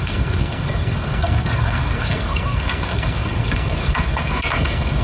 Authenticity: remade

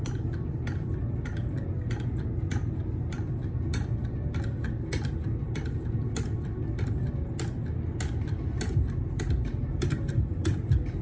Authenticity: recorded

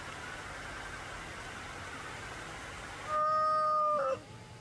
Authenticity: recorded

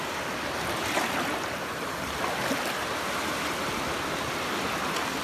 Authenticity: recorded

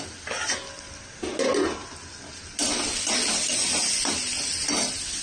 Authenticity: recorded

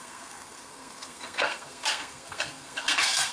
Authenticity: remade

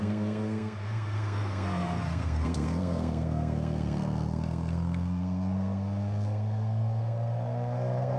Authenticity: remade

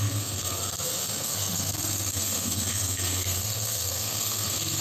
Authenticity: remade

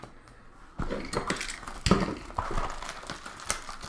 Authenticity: recorded